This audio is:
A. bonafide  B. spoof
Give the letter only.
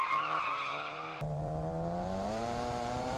B